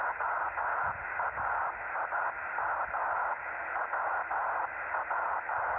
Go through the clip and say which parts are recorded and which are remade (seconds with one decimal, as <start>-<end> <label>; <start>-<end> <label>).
0.0-3.0 recorded; 3.0-5.8 remade